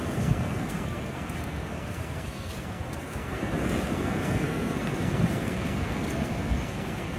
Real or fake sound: fake